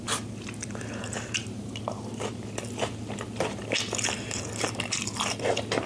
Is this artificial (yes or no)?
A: no